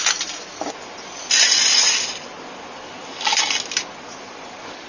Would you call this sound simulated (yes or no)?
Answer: no